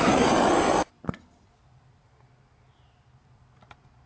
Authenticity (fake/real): real